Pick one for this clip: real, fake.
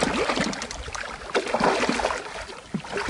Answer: real